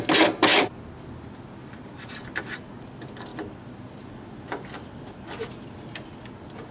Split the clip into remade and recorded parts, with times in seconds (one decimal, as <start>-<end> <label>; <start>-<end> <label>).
0.0-1.6 recorded; 1.6-2.6 remade; 2.6-3.3 recorded; 3.3-4.1 remade; 4.1-6.7 recorded